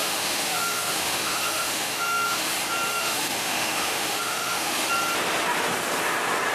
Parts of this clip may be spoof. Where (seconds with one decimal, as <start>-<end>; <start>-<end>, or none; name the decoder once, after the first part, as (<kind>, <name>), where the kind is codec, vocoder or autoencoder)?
0.0-2.5 (autoencoder, DAC-VAE); 2.9-4.9